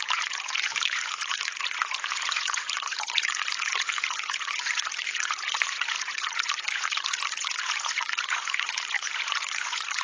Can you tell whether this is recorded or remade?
remade